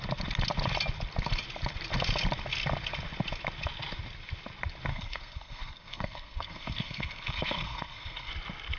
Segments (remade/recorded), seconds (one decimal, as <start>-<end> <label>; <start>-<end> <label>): 0.0-4.9 recorded; 4.9-8.3 remade; 8.3-8.8 recorded